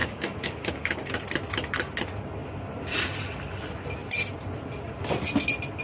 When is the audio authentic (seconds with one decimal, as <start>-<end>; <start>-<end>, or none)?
1.2-5.8